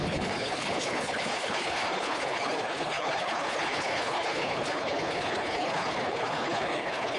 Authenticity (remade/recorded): remade